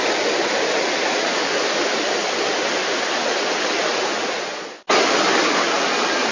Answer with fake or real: real